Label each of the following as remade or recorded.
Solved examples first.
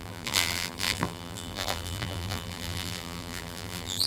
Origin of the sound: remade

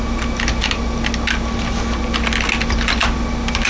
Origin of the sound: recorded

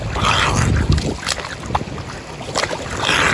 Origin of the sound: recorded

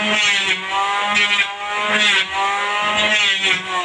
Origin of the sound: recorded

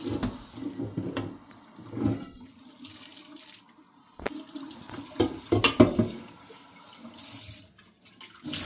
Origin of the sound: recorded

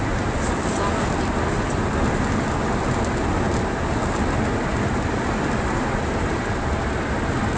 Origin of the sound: recorded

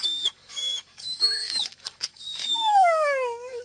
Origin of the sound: remade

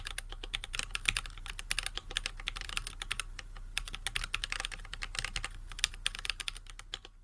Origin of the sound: recorded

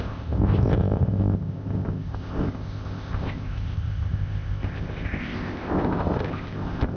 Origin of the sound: remade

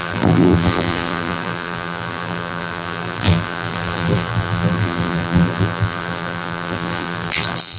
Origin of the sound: remade